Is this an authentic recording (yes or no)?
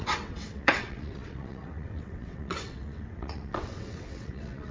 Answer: no